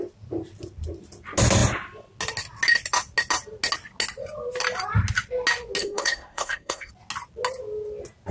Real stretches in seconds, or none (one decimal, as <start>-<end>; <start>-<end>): 0.0-5.8; 6.9-8.3